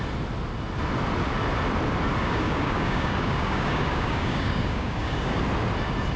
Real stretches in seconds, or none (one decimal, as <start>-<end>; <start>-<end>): 0.0-2.2; 5.4-6.2

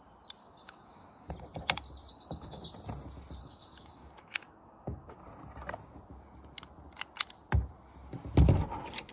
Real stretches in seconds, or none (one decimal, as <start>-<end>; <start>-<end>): 0.0-0.4; 1.3-2.1; 2.6-3.4; 5.2-9.1

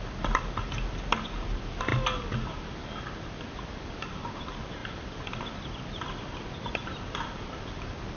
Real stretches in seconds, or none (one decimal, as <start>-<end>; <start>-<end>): 0.0-8.2

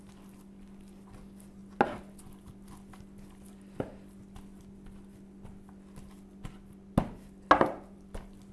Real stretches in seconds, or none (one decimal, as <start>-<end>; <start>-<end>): 0.0-8.5

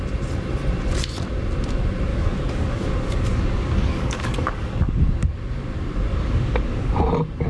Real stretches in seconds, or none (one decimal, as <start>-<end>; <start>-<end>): 0.0-2.1; 5.0-6.1; 6.9-7.5

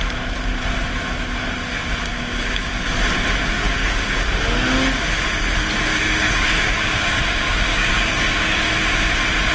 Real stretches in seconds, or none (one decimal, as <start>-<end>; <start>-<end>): 0.0-2.1; 2.7-3.6; 4.2-5.9; 7.2-7.7; 8.7-9.5

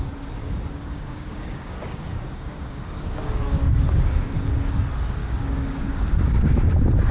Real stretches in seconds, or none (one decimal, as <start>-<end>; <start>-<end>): 0.0-0.4; 4.7-5.2; 6.5-7.1

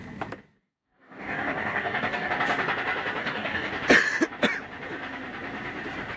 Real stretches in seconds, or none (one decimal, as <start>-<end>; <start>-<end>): 0.0-0.6; 2.3-3.2; 3.7-6.2